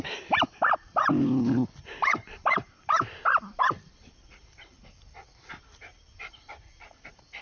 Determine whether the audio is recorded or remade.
remade